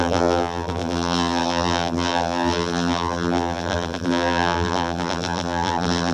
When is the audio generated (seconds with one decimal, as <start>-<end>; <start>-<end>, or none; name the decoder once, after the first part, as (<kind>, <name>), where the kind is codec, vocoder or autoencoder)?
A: 0.0-6.1 (vocoder, BigVGAN v2)